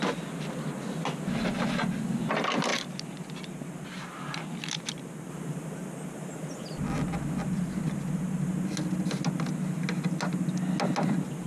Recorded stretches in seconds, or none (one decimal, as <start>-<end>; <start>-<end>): 0.0-11.5